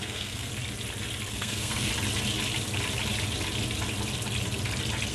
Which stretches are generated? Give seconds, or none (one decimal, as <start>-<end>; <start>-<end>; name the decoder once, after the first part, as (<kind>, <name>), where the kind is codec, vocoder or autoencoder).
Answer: 0.0-0.5 (codec, SNAC); 1.3-1.9

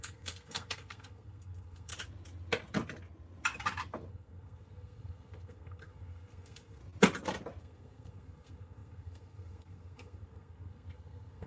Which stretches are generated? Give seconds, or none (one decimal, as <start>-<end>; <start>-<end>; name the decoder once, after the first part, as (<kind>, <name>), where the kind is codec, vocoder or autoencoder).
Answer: 0.0-1.9 (codec, SNAC); 4.1-6.8; 7.6-11.5

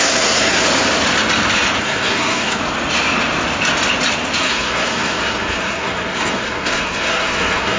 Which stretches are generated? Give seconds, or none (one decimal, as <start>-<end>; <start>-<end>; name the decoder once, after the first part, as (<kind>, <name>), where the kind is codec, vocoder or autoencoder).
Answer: 0.0-0.6 (codec, SNAC); 1.8-2.6; 4.4-7.8

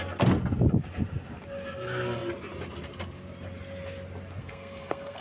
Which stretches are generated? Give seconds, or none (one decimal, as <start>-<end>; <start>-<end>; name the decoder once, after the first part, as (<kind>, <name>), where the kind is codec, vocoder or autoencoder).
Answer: 4.4-5.2 (codec, SNAC)

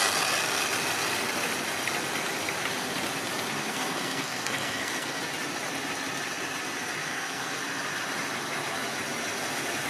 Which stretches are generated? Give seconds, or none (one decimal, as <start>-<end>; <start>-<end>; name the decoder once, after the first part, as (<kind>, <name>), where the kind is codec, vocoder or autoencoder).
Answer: 3.6-5.2 (codec, SNAC); 7.0-7.6

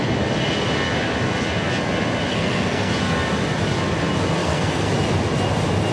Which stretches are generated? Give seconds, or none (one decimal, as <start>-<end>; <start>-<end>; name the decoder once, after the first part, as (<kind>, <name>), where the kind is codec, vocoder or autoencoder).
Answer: 2.3-2.9 (codec, SNAC); 4.4-4.9

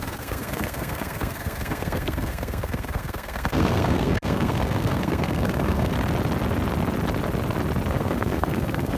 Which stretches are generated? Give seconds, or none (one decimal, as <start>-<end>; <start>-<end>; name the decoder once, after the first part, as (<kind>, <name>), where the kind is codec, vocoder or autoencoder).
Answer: 0.0-5.9 (codec, SNAC); 7.9-9.0